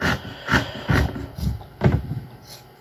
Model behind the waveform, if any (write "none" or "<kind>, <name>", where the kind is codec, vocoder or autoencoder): none